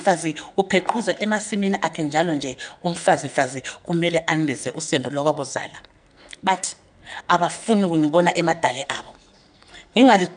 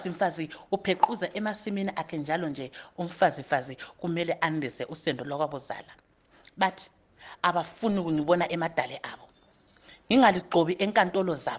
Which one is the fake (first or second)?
first